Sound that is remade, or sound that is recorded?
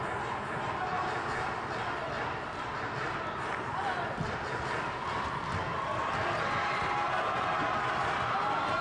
recorded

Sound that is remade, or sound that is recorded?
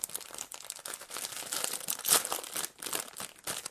recorded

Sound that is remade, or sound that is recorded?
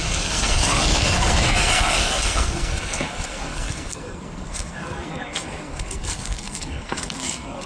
remade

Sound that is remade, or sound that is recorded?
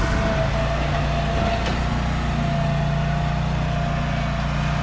recorded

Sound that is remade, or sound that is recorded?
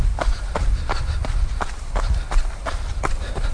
recorded